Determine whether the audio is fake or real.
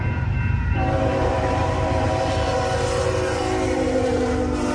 fake